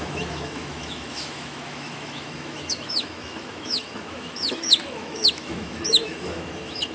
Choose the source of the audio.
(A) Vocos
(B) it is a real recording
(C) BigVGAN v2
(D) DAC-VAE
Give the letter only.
D